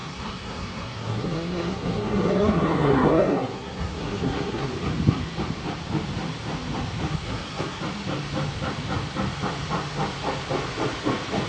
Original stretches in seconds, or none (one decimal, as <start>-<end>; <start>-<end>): 4.7-7.1; 7.8-11.5